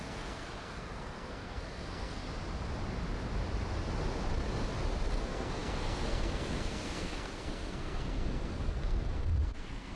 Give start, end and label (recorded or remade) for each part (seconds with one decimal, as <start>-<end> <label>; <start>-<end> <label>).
0.0-2.2 remade; 2.2-5.1 recorded; 5.1-9.9 remade

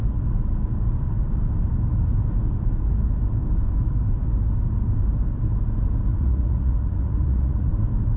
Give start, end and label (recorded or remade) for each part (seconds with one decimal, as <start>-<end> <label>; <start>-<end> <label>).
0.0-6.1 recorded; 6.1-7.7 remade; 7.7-8.2 recorded

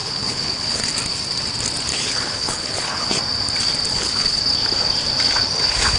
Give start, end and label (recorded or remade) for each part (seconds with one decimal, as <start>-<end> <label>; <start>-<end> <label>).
0.0-0.8 remade; 0.8-1.9 recorded; 1.9-3.2 remade; 3.2-3.9 recorded; 3.9-4.4 remade; 4.4-6.0 recorded

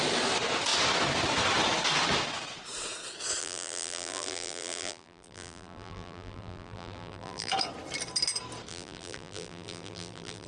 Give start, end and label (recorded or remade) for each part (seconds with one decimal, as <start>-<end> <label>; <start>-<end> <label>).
0.0-3.4 recorded; 3.4-7.5 remade; 7.5-8.7 recorded; 8.7-10.5 remade

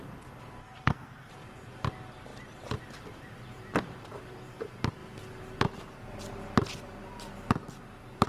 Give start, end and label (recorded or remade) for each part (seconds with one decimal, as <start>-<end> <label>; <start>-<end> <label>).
0.0-0.6 recorded; 0.6-1.3 remade; 1.3-8.3 recorded

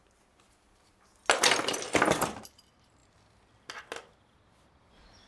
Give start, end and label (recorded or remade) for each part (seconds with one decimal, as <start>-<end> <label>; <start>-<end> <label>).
0.0-5.3 recorded